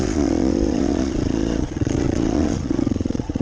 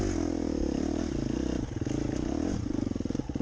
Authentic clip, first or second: second